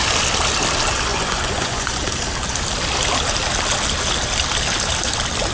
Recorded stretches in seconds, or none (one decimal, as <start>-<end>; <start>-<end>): 0.0-1.1; 2.0-5.5